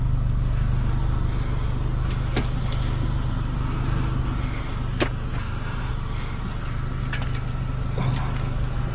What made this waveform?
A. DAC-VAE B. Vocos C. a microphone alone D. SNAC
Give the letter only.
C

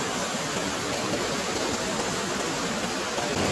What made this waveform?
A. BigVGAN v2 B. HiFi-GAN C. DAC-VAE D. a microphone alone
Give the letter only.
D